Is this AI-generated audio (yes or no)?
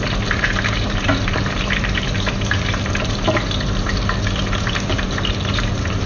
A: yes